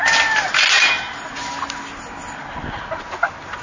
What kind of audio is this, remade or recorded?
recorded